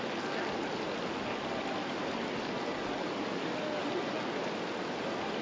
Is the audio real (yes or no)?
yes